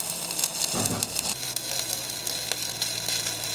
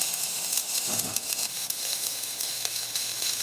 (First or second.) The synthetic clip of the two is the second